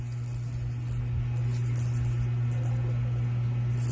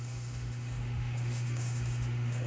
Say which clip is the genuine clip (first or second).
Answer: first